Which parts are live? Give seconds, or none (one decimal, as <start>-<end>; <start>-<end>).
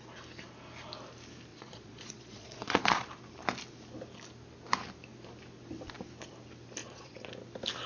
0.0-1.5; 3.0-6.8; 7.3-7.9